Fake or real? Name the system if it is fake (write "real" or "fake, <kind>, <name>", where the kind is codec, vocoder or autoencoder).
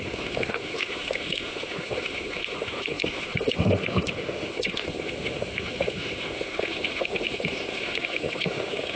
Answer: fake, autoencoder, DAC-VAE